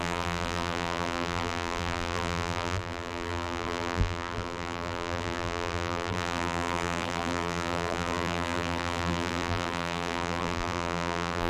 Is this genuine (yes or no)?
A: no